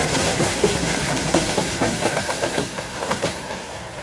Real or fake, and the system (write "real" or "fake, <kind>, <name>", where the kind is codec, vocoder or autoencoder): fake, codec, SNAC